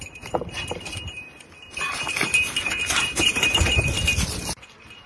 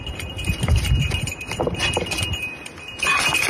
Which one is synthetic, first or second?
first